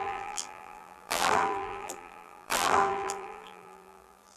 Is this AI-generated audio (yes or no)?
yes